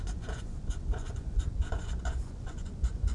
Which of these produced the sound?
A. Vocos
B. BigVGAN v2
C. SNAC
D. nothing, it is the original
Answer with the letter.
A